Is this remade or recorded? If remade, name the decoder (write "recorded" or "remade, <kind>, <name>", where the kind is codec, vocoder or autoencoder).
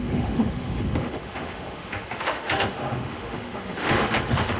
remade, autoencoder, DAC-VAE